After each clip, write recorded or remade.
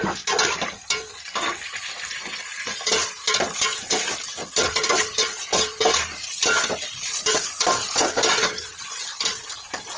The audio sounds recorded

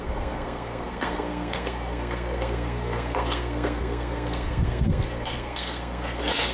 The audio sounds remade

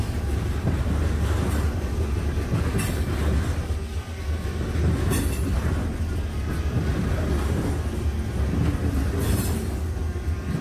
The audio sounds recorded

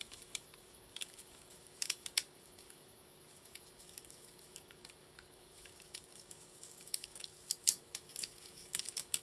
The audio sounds remade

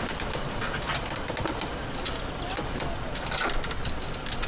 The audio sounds recorded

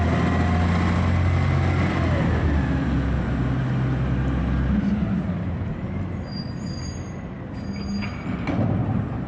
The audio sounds recorded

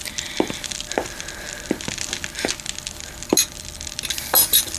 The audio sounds recorded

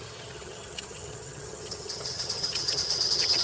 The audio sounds remade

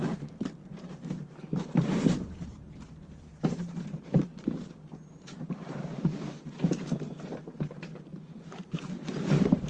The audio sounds remade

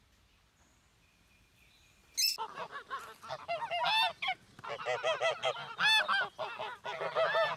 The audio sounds recorded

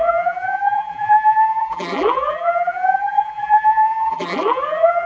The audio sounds remade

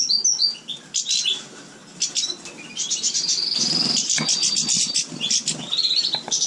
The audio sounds recorded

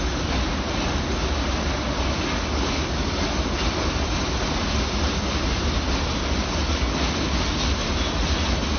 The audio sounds recorded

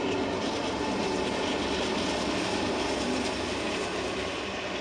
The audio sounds recorded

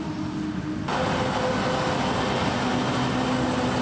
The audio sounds recorded